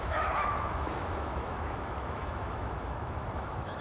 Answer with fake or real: fake